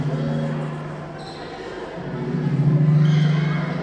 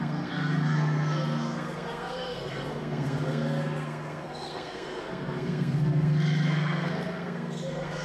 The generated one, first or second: second